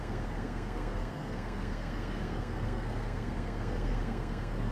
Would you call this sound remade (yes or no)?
yes